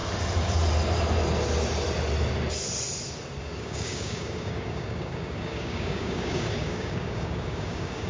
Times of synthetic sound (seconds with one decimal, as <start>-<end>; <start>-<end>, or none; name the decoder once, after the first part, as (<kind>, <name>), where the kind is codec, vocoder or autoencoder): 3.4-8.1 (codec, DAC)